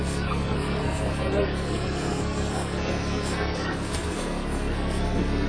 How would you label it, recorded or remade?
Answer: remade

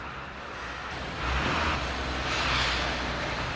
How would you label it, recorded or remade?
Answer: recorded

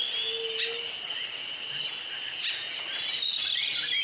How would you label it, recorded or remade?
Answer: recorded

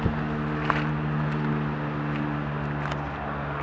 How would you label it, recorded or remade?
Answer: recorded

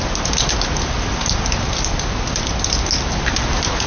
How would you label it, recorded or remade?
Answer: recorded